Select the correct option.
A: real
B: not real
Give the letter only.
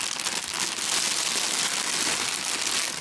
A